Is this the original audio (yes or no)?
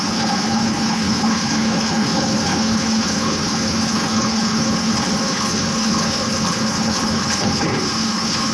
no